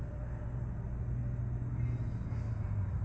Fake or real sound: real